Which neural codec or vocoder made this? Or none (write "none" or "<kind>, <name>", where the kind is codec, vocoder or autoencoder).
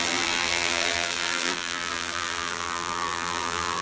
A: vocoder, BigVGAN v2